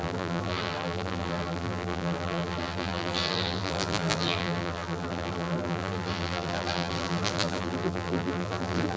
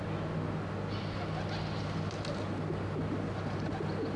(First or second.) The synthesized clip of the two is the first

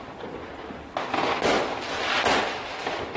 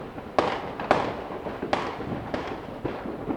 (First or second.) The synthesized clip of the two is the first